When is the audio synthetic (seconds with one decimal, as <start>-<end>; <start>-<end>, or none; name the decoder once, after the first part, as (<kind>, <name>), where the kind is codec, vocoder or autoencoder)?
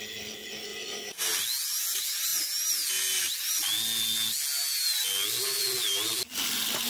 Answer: 0.7-1.3 (vocoder, BigVGAN v2)